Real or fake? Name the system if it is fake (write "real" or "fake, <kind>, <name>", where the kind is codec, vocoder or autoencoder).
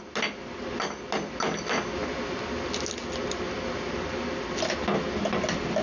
real